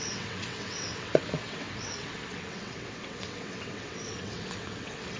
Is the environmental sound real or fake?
fake